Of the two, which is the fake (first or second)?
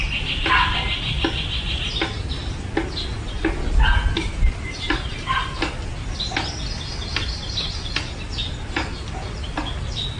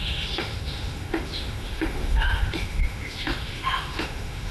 second